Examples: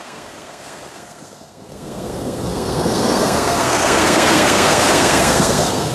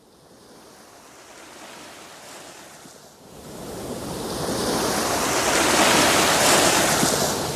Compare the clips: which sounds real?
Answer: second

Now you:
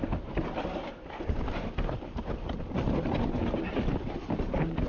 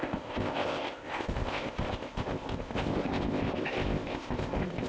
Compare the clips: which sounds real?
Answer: first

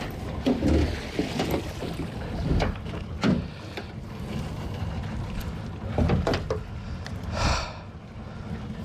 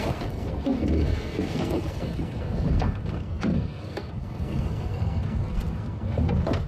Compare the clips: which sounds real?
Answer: first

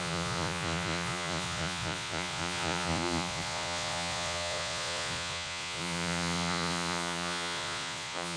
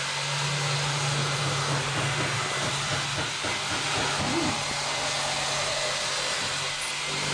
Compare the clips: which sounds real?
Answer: second